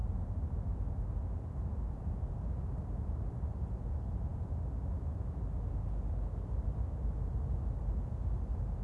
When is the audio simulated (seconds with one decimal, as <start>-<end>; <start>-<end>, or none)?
1.9-4.3; 7.3-8.8